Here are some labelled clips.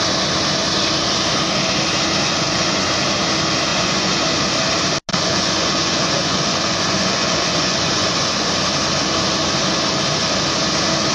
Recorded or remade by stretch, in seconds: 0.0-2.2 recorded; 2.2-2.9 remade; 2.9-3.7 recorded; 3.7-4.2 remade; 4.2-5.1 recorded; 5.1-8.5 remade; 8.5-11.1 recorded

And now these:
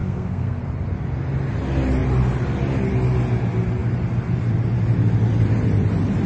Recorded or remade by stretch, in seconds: 0.0-0.6 remade; 0.6-6.3 recorded

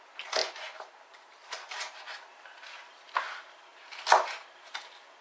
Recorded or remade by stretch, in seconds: 0.0-0.4 recorded; 0.4-2.0 remade; 2.0-5.2 recorded